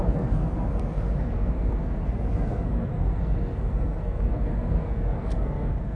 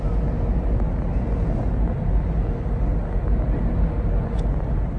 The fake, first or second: first